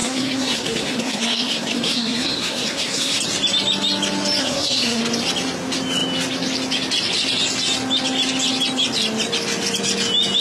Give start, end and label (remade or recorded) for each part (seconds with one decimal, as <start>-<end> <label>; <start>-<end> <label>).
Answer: 0.0-3.2 remade; 3.2-4.4 recorded; 4.4-5.0 remade; 5.0-10.4 recorded

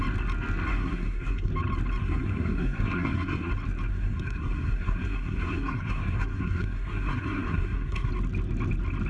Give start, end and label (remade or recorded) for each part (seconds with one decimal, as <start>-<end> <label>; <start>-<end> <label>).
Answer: 0.0-0.7 recorded; 0.7-1.5 remade; 1.5-2.0 recorded; 2.0-3.5 remade; 3.5-3.9 recorded; 3.9-8.1 remade; 8.1-9.1 recorded

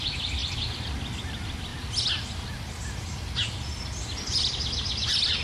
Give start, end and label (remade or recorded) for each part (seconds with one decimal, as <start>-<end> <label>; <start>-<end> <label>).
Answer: 0.0-5.4 recorded

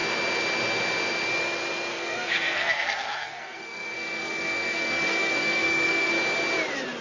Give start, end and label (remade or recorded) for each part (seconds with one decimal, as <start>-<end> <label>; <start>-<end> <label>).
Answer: 0.0-1.9 recorded; 1.9-6.1 remade; 6.1-7.0 recorded

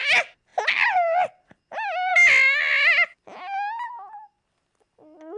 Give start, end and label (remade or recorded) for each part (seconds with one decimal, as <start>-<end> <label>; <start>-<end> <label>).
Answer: 0.0-5.4 recorded

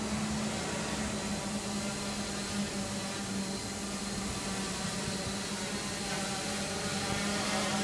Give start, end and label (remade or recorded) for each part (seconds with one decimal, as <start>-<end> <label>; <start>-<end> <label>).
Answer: 0.0-7.8 recorded

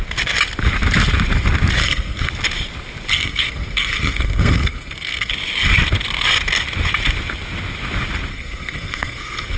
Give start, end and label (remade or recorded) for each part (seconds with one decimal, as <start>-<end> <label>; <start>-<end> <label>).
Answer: 0.0-1.8 recorded; 1.8-2.3 remade; 2.3-3.1 recorded; 3.1-5.3 remade; 5.3-8.3 recorded; 8.3-9.6 remade

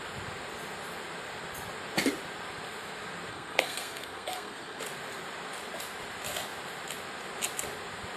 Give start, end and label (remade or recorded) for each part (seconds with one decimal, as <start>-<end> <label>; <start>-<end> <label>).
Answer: 0.0-3.3 recorded; 3.3-4.8 remade; 4.8-8.2 recorded